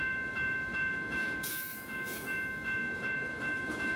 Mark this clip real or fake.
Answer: fake